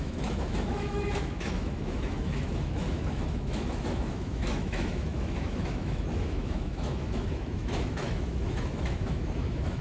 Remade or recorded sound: remade